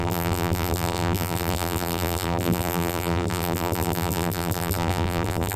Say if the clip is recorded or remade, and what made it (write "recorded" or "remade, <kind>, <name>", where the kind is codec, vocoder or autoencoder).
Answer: remade, vocoder, BigVGAN v2